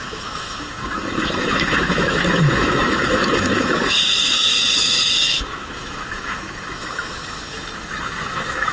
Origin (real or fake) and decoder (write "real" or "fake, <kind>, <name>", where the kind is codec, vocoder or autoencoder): fake, autoencoder, DAC-VAE